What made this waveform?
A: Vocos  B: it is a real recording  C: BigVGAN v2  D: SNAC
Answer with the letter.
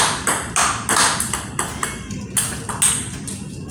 B